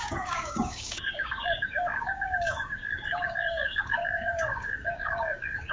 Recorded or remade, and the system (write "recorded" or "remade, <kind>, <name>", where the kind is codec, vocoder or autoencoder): remade, codec, DAC